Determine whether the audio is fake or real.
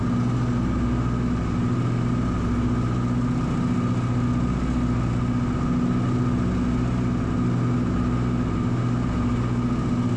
real